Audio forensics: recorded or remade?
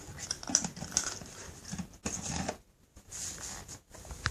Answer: recorded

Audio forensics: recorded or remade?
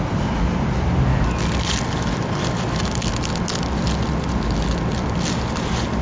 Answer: recorded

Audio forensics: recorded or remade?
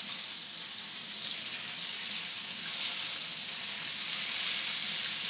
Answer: recorded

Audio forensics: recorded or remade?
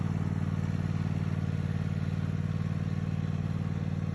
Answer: recorded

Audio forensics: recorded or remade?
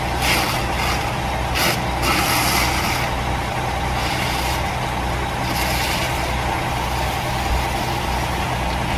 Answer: recorded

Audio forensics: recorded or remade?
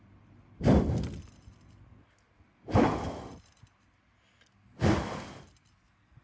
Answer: recorded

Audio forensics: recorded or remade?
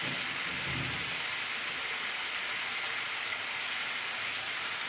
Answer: recorded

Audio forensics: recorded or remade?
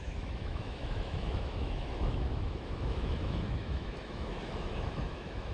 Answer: remade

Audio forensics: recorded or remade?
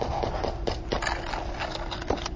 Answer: recorded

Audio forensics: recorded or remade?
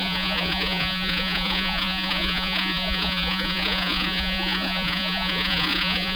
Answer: remade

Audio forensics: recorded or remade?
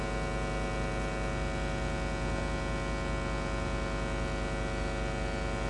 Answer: recorded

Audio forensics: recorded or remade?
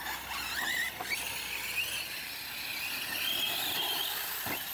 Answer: recorded